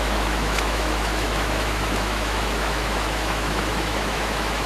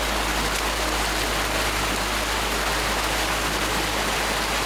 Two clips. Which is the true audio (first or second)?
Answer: second